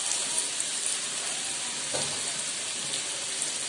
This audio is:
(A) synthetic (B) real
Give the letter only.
B